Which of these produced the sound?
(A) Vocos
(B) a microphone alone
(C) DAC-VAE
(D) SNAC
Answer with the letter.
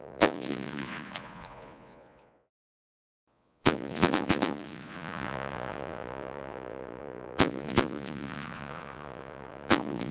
A